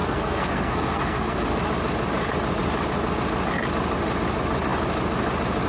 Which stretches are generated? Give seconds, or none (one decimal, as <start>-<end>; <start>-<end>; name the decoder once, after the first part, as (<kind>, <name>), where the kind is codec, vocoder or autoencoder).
0.0-1.6 (codec, SNAC)